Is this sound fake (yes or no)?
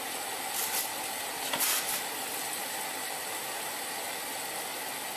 no